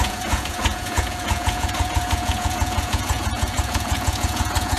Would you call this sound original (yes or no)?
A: no